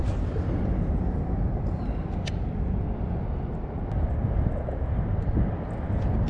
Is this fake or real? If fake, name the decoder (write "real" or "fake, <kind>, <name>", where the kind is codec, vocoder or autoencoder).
real